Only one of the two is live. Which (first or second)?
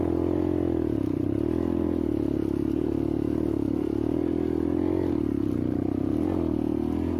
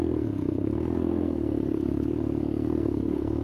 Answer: first